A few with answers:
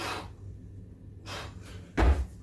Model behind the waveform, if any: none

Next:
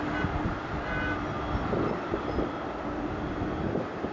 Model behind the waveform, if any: none